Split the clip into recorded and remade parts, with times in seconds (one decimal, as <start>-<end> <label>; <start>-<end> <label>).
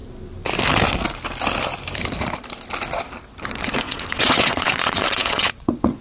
0.0-3.6 recorded; 3.6-6.0 remade